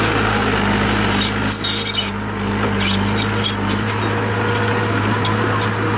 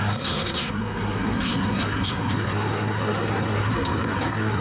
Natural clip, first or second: first